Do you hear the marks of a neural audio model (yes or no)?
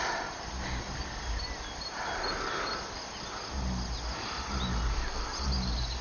no